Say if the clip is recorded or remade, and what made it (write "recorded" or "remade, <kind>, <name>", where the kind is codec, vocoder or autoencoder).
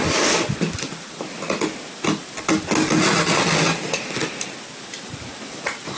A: recorded